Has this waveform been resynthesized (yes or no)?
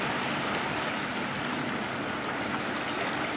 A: no